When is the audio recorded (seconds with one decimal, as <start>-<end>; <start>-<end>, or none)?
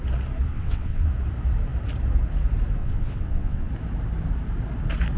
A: 0.0-0.5; 1.1-2.8; 3.7-5.2